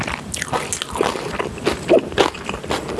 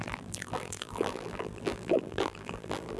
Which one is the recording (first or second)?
first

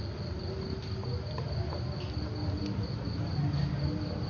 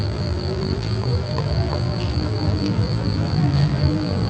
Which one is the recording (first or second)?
first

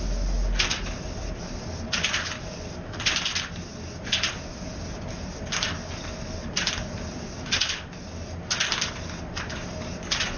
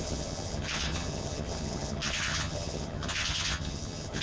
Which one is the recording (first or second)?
first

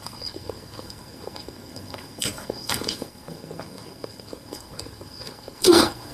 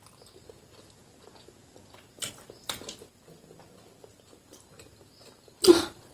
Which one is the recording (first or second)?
second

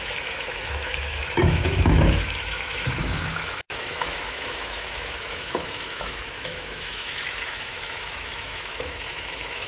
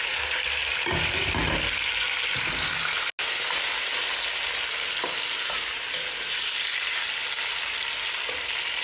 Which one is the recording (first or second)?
second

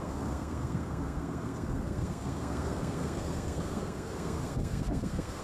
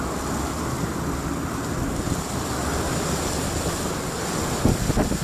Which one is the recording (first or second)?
second